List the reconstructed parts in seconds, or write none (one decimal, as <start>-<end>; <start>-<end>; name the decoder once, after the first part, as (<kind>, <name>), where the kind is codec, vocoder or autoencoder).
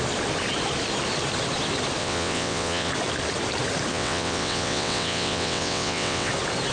2.0-2.9 (vocoder, WaveNeXt); 3.9-6.3